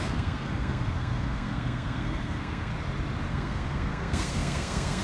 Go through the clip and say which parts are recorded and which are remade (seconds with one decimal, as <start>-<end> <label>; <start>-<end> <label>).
0.0-2.7 remade; 2.7-3.3 recorded; 3.3-5.0 remade